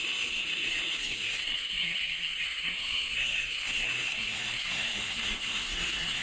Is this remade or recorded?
remade